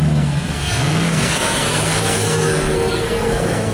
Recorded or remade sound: remade